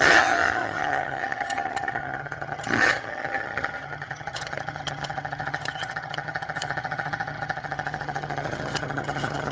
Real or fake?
fake